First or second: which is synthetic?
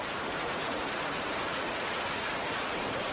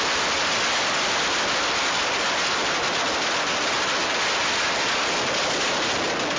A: first